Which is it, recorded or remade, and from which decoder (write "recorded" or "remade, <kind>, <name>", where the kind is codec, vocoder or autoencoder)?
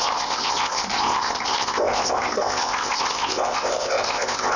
remade, codec, ZipCodec